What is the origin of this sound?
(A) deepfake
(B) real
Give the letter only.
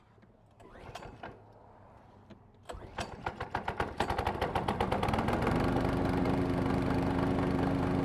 B